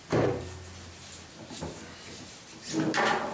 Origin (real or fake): real